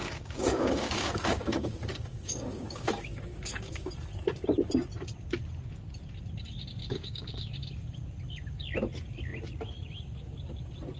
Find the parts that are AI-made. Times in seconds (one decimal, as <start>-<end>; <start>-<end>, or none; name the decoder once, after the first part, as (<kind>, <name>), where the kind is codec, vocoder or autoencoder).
0.0-3.9 (codec, DAC); 6.8-7.5